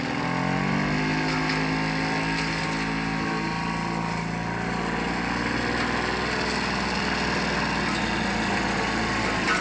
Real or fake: real